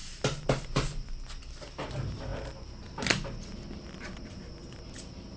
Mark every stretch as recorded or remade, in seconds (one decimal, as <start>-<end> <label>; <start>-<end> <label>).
0.0-5.4 recorded